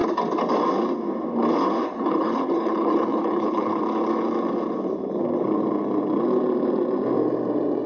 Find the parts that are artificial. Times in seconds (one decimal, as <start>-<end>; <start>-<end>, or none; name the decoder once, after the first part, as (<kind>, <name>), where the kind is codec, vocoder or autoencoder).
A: 1.8-3.8 (codec, HILCodec)